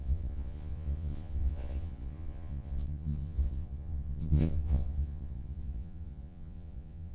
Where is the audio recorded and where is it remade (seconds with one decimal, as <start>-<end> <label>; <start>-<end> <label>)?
0.0-7.1 remade